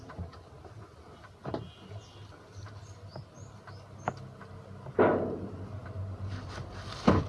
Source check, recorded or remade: recorded